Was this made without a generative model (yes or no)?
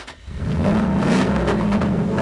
no